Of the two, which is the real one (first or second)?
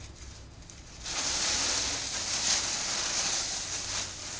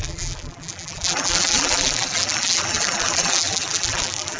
first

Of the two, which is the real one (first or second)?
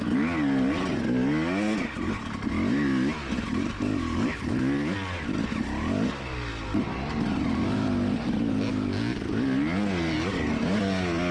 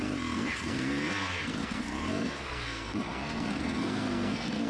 first